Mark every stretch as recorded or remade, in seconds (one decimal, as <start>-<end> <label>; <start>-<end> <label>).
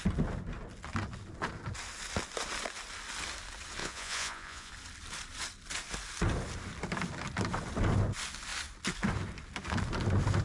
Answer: 0.0-3.8 recorded; 3.8-4.7 remade; 4.7-10.4 recorded